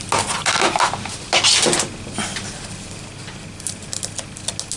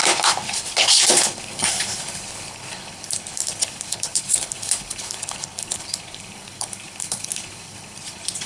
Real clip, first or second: first